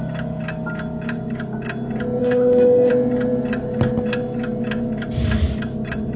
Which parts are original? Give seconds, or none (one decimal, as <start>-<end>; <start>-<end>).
0.0-2.2; 2.9-6.2

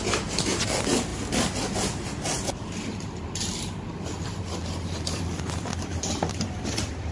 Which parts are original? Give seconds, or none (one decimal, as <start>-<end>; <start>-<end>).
0.0-7.1